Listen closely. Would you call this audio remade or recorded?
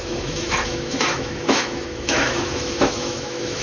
remade